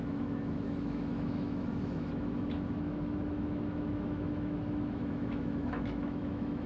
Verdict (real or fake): fake